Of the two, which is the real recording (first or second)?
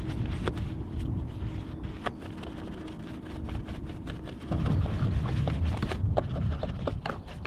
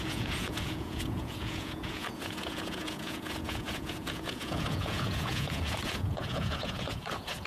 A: first